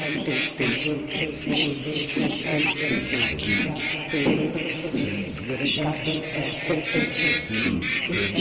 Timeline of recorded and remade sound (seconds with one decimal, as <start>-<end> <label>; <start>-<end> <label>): 0.0-8.4 recorded

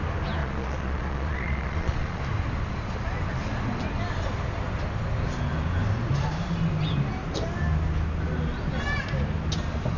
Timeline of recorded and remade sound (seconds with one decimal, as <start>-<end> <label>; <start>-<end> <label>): 0.0-0.4 recorded; 0.4-2.2 remade; 2.2-10.0 recorded

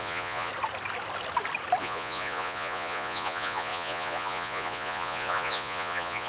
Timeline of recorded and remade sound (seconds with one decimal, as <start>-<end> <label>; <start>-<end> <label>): 0.0-0.5 remade; 0.5-1.8 recorded; 1.8-6.3 remade

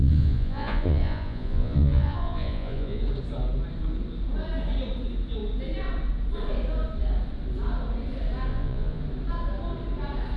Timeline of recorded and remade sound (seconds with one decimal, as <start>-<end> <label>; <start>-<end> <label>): 0.0-3.0 remade; 3.0-8.5 recorded; 8.5-9.0 remade; 9.0-10.4 recorded

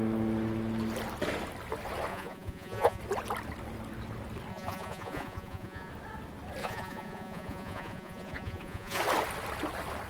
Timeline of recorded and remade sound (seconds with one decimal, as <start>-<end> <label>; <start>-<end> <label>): 0.0-2.1 recorded; 2.1-3.0 remade; 3.0-4.5 recorded; 4.5-5.9 remade; 5.9-6.6 recorded; 6.6-9.0 remade; 9.0-10.1 recorded

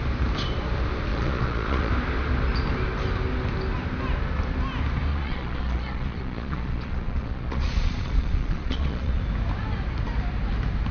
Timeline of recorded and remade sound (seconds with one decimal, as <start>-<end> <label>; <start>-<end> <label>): 0.0-1.1 recorded; 1.1-1.9 remade; 1.9-5.1 recorded; 5.1-9.2 remade; 9.2-10.9 recorded

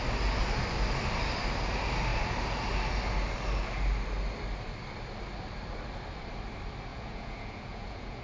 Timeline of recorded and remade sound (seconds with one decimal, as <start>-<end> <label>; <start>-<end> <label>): 0.0-6.9 recorded; 6.9-8.2 remade